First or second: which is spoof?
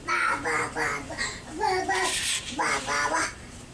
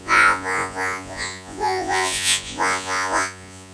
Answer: second